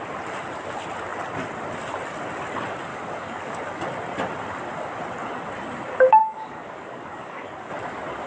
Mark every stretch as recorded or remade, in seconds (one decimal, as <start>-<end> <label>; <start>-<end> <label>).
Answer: 0.0-2.9 recorded; 2.9-3.6 remade; 3.6-6.2 recorded; 6.2-7.7 remade; 7.7-8.3 recorded